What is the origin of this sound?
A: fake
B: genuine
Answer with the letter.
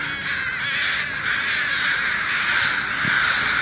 B